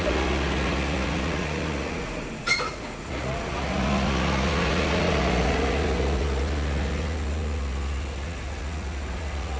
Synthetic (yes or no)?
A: yes